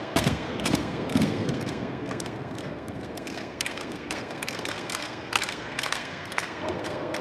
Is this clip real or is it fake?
fake